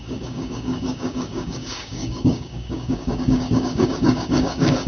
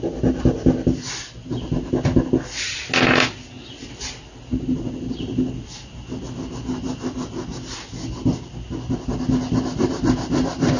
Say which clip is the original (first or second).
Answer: second